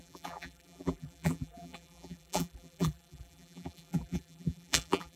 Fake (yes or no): yes